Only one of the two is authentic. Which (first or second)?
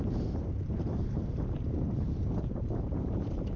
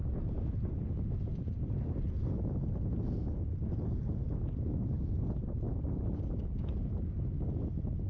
second